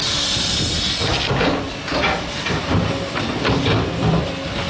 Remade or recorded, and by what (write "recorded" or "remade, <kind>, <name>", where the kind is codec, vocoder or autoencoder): recorded